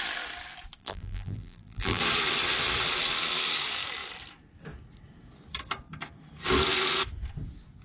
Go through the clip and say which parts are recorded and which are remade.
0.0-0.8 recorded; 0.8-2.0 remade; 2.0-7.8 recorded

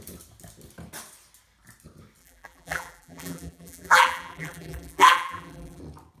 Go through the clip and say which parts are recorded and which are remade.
0.0-2.2 recorded; 2.2-5.8 remade; 5.8-6.2 recorded